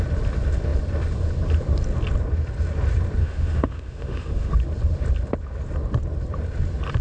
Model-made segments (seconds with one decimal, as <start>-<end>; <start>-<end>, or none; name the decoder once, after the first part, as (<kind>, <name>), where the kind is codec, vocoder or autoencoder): 3.2-4.5 (autoencoder, DAC-VAE)